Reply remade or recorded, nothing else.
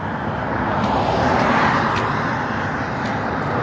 recorded